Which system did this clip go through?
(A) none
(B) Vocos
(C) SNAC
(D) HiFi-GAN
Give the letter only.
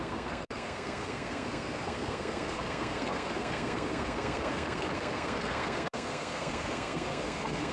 C